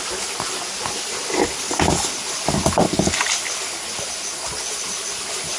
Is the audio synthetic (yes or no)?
no